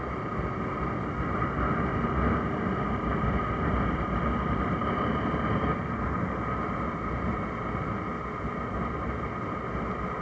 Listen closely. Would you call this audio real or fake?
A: real